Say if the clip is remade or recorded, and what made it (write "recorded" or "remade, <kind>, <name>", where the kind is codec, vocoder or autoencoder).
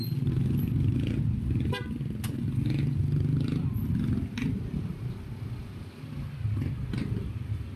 recorded